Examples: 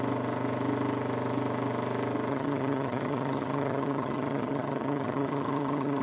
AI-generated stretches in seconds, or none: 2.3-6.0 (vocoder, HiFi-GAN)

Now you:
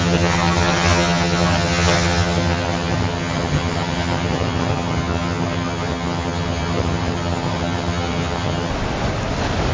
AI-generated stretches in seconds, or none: 0.0-8.7 (vocoder, HiFi-GAN)

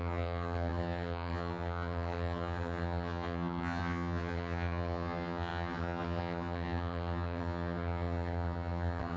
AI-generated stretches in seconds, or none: 0.0-9.2 (vocoder, HiFi-GAN)

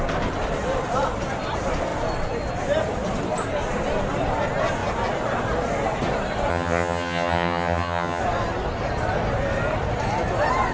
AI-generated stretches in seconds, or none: 6.5-8.2 (vocoder, HiFi-GAN)

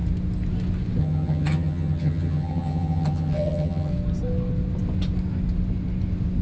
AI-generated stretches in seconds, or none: 1.0-3.9 (vocoder, HiFi-GAN)

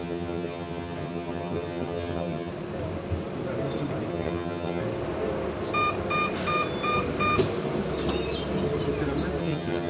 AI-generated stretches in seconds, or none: 0.0-2.5 (vocoder, HiFi-GAN); 4.1-4.8; 9.4-9.9

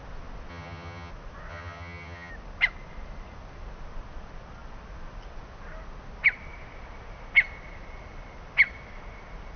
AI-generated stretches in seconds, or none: 0.5-1.1 (vocoder, HiFi-GAN); 1.5-2.3

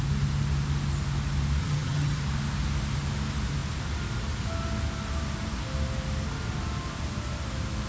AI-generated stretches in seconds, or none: 1.6-2.2 (vocoder, HiFi-GAN)